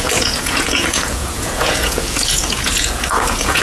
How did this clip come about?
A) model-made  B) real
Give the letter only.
A